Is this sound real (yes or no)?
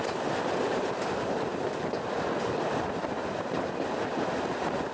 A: yes